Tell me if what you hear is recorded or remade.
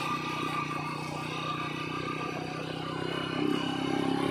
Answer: recorded